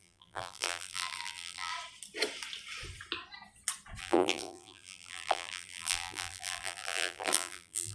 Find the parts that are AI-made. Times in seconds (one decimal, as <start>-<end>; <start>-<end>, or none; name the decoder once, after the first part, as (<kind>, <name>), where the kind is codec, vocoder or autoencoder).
0.0-1.7 (vocoder, BigVGAN v2); 4.0-7.9